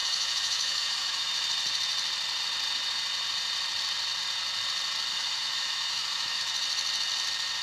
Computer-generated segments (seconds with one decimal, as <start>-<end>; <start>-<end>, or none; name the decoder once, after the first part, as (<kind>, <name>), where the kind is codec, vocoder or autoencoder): 0.0-1.3 (autoencoder, DAC-VAE); 5.1-6.4